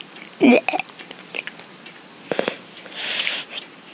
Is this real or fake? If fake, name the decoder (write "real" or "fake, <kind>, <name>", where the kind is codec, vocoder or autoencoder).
real